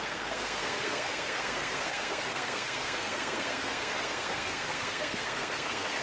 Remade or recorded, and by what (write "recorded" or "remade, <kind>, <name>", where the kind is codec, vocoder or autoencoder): remade, codec, SNAC